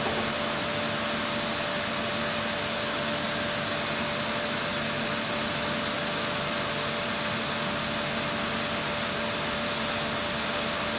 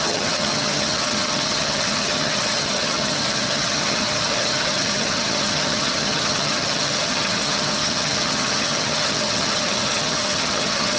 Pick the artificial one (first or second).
second